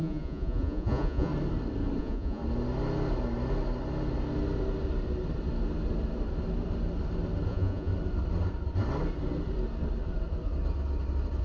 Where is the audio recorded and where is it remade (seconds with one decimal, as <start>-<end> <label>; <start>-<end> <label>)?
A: 0.0-1.3 remade; 1.3-2.0 recorded; 2.0-2.4 remade; 2.4-7.5 recorded; 7.5-7.9 remade; 7.9-11.4 recorded